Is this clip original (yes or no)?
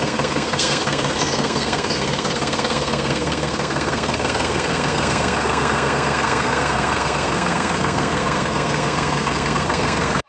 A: no